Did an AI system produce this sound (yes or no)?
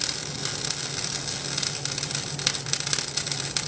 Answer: no